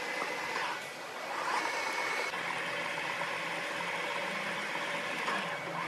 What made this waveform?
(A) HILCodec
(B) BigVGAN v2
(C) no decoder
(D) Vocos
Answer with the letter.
C